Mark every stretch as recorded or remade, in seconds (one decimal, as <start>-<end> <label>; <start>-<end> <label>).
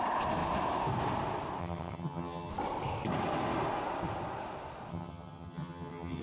0.0-1.6 recorded; 1.6-2.5 remade; 2.5-4.9 recorded; 4.9-6.2 remade